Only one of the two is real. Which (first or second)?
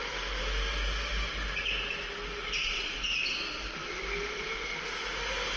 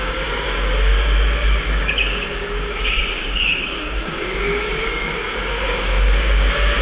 first